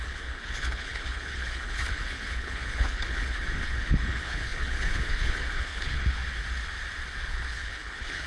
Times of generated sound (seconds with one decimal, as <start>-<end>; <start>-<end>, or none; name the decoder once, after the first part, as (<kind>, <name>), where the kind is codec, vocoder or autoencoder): 0.0-6.2 (codec, HILCodec); 7.3-8.3

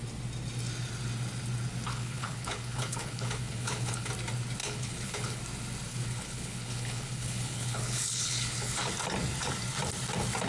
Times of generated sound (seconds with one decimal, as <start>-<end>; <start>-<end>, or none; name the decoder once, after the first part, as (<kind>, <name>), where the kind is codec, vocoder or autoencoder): 1.9-4.1 (codec, HILCodec); 4.6-5.4; 5.9-8.9

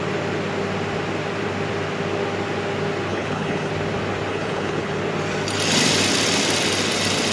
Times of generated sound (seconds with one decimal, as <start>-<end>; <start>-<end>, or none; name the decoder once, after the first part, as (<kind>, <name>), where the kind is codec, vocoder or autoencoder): 3.1-3.7 (codec, HILCodec); 4.3-5.0

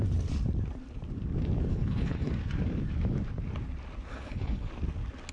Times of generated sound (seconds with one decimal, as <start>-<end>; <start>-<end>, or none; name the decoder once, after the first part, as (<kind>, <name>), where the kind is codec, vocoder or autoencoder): 1.7-2.3 (codec, HILCodec); 4.1-4.7

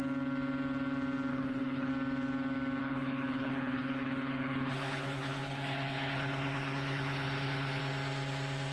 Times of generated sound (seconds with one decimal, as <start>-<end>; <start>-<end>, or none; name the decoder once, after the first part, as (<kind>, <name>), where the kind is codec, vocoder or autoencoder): 1.3-1.9 (codec, HILCodec); 2.8-7.8

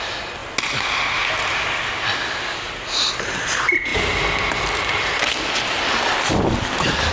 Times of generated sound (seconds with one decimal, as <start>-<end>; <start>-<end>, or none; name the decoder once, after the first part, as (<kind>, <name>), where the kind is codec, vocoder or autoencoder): none